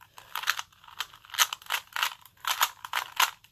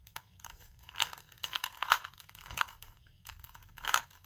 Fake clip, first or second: second